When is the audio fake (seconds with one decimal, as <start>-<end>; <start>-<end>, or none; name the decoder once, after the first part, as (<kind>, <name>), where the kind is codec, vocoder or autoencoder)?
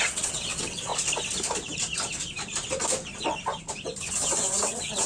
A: 0.0-0.9 (vocoder, WaveNeXt); 4.0-5.1